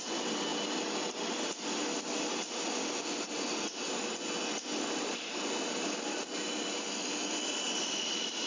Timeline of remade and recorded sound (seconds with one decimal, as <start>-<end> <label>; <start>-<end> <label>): 0.0-8.5 recorded